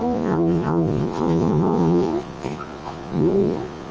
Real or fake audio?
fake